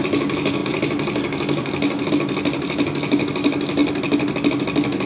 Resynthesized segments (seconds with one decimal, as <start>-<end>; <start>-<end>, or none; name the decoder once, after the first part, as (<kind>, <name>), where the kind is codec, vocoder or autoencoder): none